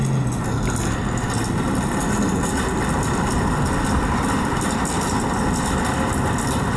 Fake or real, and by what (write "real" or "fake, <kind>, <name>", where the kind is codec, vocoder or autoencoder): real